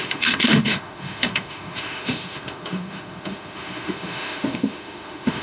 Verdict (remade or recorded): remade